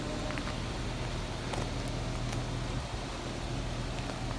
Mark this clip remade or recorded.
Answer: recorded